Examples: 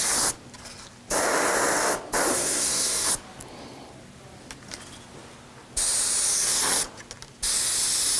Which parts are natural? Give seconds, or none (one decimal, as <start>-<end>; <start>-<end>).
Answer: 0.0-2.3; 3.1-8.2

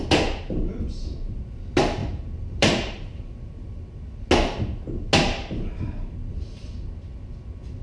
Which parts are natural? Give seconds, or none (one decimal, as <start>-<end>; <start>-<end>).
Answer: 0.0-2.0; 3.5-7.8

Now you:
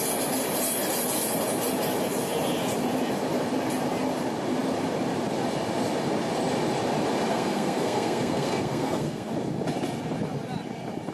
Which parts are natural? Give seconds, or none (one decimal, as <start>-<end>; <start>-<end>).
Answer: 0.0-7.3; 9.3-11.1